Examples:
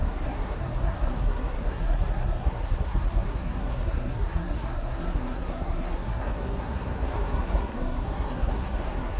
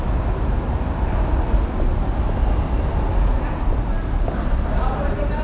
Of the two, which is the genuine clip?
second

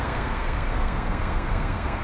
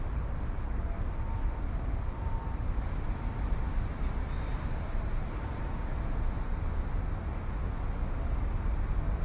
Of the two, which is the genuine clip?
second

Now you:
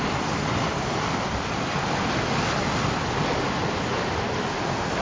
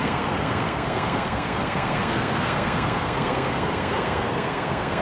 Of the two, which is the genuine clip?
first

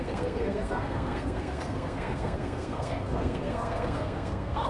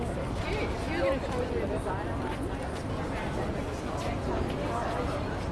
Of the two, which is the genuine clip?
second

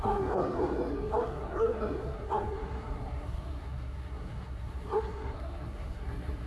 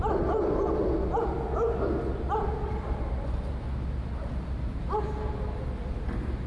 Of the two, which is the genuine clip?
second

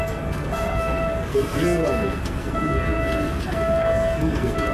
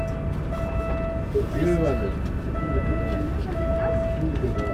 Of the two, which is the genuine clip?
second